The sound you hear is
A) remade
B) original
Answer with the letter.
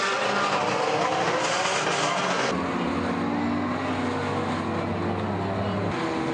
B